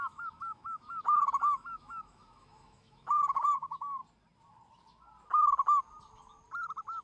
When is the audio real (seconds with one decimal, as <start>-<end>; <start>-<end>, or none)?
4.0-7.0